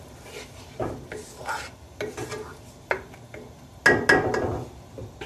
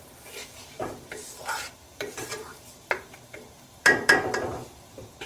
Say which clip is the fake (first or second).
second